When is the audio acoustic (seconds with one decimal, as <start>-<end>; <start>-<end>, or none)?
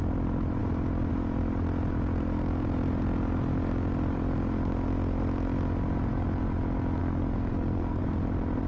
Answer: 0.0-7.0; 8.0-8.7